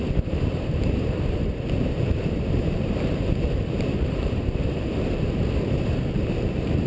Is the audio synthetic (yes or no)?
yes